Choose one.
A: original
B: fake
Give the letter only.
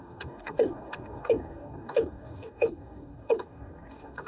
B